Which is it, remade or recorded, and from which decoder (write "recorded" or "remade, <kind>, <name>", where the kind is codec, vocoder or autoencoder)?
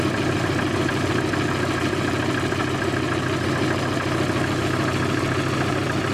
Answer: recorded